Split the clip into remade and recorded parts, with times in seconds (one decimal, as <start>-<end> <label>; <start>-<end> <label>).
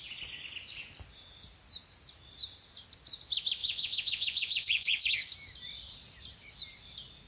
0.0-3.6 recorded; 3.6-5.0 remade; 5.0-7.3 recorded